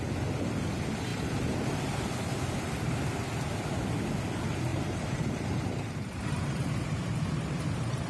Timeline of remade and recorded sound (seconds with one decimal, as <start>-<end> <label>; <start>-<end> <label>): 0.0-1.1 recorded; 1.1-2.0 remade; 2.0-4.7 recorded; 4.7-8.1 remade